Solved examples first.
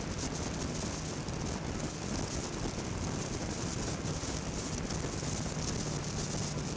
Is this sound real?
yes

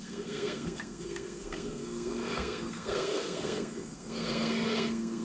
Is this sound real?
no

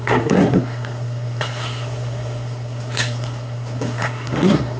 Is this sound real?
no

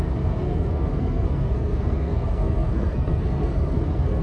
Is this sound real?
no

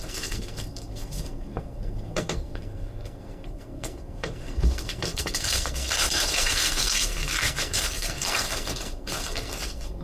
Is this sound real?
no